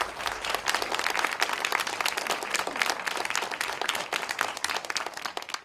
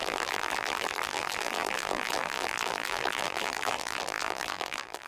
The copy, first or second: second